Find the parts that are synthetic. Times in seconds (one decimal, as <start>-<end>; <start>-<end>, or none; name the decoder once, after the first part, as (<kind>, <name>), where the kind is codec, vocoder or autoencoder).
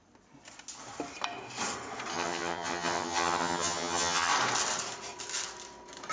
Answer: 2.1-4.3 (vocoder, HiFi-GAN)